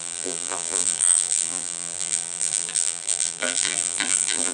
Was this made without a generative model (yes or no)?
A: no